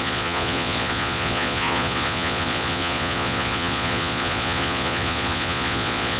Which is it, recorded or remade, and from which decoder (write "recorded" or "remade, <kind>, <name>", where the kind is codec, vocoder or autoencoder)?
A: remade, vocoder, Vocos